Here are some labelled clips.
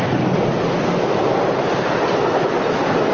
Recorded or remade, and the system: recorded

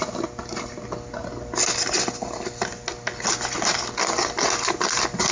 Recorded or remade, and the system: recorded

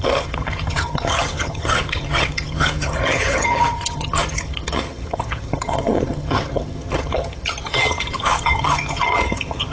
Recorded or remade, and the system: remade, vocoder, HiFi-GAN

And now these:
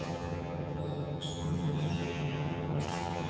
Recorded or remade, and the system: remade, vocoder, HiFi-GAN